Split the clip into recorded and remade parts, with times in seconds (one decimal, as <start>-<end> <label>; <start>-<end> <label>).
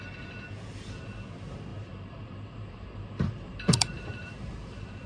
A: 0.0-1.7 recorded; 1.7-5.1 remade